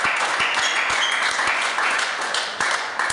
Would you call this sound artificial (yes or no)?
yes